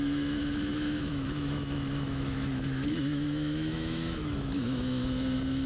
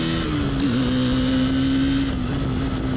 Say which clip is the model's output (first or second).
first